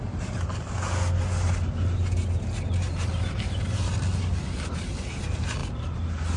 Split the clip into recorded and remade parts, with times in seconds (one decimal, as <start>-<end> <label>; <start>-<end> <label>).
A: 0.0-6.4 recorded